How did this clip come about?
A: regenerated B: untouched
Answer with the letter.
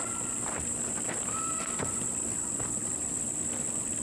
A